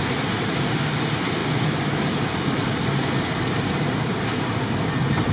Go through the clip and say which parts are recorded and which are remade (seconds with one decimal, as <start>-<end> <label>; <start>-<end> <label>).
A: 0.0-1.4 recorded; 1.4-4.6 remade; 4.6-5.3 recorded